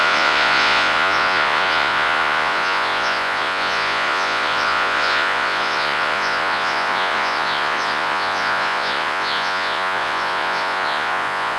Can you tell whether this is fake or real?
fake